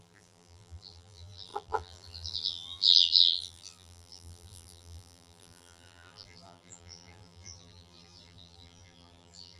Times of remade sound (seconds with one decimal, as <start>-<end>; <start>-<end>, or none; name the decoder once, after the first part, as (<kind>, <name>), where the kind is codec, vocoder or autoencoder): 0.0-9.6 (vocoder, BigVGAN v2)